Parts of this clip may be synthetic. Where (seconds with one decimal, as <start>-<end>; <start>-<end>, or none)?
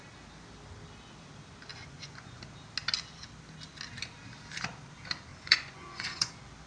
1.7-2.4; 5.3-6.3